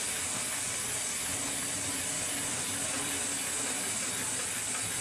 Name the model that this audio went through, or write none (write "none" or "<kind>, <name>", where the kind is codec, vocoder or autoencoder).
none